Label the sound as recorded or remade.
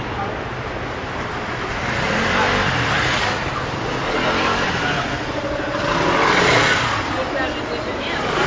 recorded